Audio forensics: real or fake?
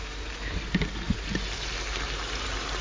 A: real